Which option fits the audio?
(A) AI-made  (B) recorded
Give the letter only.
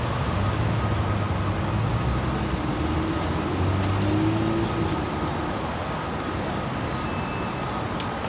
B